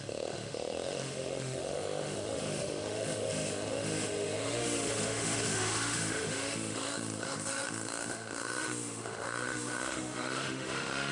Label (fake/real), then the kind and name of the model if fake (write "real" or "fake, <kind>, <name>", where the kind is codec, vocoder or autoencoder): fake, autoencoder, DAC-VAE